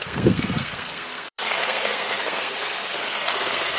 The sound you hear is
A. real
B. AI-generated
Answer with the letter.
B